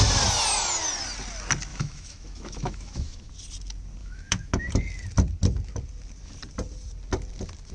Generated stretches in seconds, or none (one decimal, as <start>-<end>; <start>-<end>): 1.7-3.3; 4.0-4.7